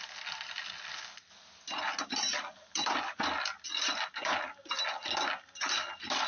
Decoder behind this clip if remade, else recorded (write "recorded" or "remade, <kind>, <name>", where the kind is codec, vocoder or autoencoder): recorded